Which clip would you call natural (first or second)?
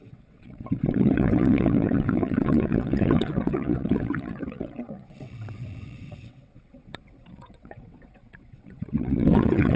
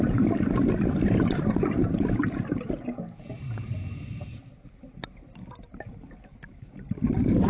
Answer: second